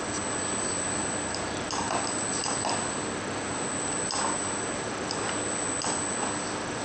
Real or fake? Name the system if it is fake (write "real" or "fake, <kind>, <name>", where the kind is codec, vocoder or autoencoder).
real